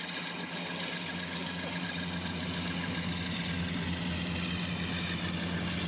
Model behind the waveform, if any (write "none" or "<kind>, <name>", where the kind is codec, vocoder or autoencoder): none